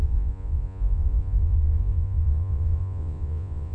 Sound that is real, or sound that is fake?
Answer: fake